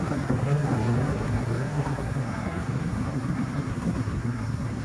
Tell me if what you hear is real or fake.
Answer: fake